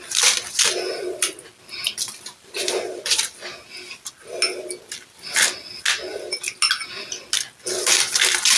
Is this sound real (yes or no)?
yes